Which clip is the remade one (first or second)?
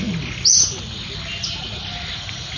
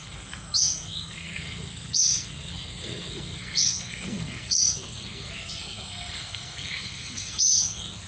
second